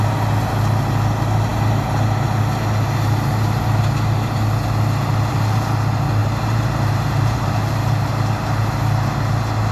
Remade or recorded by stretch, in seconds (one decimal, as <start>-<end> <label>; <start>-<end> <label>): 0.0-6.2 recorded; 6.2-8.1 remade; 8.1-9.7 recorded